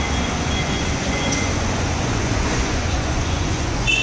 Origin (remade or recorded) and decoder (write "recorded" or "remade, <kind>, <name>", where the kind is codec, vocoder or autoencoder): remade, vocoder, Vocos